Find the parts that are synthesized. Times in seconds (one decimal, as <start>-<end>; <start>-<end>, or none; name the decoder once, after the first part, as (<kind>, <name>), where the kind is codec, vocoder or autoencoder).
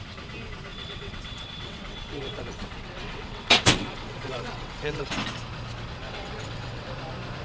0.7-5.1 (vocoder, WaveNeXt); 6.0-6.9